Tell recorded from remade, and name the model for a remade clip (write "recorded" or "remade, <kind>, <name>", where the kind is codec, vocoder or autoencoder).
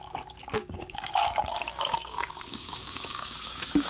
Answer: remade, codec, DAC